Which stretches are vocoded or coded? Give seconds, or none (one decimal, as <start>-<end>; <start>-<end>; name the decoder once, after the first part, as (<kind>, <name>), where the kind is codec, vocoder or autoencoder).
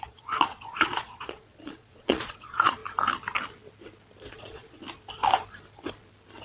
0.0-2.8 (vocoder, Vocos); 4.3-4.8